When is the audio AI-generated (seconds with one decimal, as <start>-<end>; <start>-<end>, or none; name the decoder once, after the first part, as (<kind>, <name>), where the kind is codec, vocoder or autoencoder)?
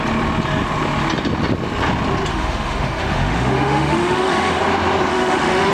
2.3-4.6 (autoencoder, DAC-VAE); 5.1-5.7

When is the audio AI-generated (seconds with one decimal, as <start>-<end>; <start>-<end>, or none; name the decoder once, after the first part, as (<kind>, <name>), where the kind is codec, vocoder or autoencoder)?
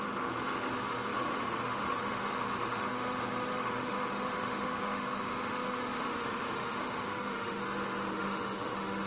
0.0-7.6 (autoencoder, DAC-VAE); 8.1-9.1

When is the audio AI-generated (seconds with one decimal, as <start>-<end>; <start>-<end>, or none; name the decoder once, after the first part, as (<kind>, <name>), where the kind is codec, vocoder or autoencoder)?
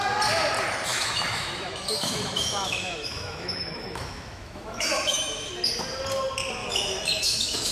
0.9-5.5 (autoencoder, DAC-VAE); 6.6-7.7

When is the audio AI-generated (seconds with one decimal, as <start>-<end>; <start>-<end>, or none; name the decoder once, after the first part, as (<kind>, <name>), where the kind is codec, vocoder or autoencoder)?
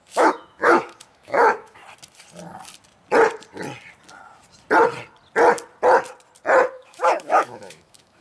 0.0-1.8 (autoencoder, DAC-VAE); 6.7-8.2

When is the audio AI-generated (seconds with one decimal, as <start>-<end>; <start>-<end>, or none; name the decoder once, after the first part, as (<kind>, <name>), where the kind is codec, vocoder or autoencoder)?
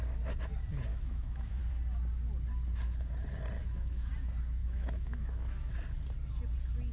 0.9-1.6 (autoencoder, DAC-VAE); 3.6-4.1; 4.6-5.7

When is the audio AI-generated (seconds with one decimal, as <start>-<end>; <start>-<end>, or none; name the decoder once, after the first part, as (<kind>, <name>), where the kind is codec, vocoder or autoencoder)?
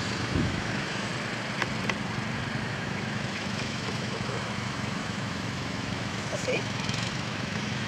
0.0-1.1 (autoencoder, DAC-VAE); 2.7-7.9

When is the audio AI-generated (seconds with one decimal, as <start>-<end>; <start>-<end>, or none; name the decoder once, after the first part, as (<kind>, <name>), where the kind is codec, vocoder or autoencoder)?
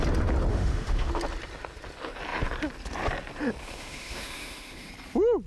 0.5-1.1 (autoencoder, DAC-VAE); 3.6-4.9